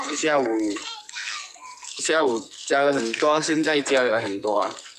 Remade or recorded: remade